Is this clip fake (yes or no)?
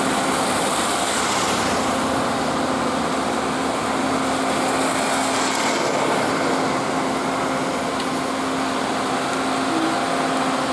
no